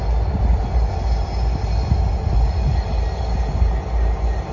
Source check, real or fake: real